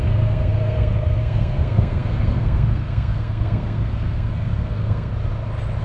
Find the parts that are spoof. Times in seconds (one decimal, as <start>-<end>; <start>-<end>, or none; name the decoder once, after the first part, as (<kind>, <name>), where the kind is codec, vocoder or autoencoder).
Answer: 0.0-5.1 (codec, SNAC)